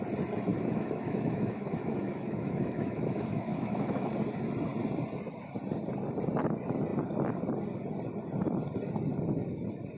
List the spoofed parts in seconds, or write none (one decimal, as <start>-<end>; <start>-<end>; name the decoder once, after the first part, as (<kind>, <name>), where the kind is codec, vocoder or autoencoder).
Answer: 0.5-4.1 (autoencoder, DAC-VAE)